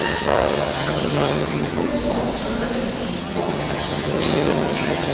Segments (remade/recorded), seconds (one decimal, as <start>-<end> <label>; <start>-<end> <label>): 0.0-1.9 remade; 1.9-3.2 recorded; 3.2-5.1 remade